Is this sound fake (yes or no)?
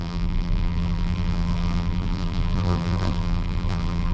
yes